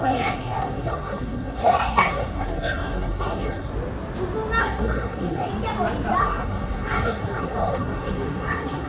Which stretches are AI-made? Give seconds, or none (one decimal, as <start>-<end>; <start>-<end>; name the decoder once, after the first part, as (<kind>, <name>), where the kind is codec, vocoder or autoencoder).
0.0-3.7 (codec, SNAC); 4.6-5.5; 6.2-8.9